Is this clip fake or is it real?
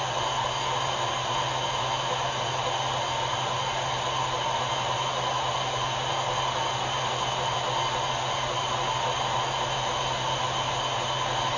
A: real